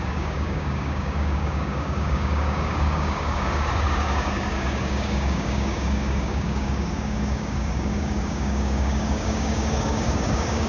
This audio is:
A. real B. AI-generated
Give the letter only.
B